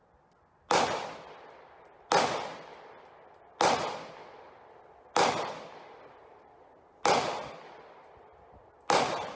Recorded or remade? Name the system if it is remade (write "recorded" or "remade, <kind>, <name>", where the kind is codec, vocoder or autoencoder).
recorded